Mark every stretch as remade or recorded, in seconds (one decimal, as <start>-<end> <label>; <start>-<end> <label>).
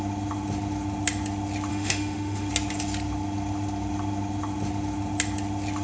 0.0-1.7 recorded; 1.7-2.5 remade; 2.5-5.8 recorded